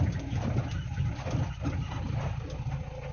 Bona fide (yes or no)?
yes